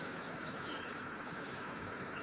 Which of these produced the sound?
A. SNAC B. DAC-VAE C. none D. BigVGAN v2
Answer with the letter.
B